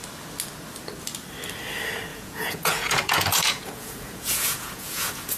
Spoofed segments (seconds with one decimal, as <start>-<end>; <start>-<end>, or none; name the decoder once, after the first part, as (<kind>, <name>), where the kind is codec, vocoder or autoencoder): 2.1-5.4 (vocoder, Vocos)